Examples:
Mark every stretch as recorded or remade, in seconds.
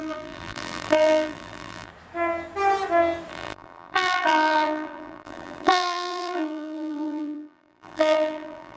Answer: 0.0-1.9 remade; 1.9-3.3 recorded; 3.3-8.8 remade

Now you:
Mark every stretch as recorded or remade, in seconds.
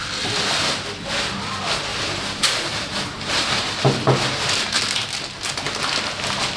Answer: 0.0-1.9 recorded; 1.9-4.8 remade; 4.8-6.6 recorded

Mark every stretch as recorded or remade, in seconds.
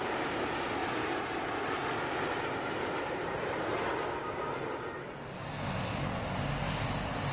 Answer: 0.0-0.8 remade; 0.8-3.2 recorded; 3.2-3.9 remade; 3.9-7.3 recorded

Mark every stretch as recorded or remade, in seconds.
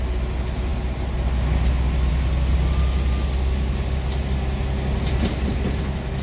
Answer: 0.0-6.2 recorded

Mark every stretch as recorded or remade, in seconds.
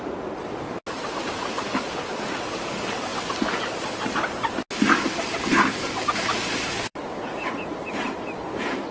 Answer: 0.0-6.3 recorded; 6.3-8.1 remade; 8.1-8.9 recorded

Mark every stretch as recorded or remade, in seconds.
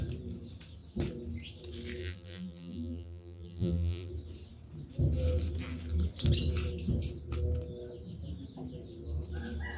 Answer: 0.0-2.0 recorded; 2.0-4.1 remade; 4.1-9.8 recorded